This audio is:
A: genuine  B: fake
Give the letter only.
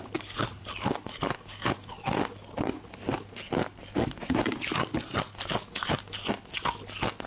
A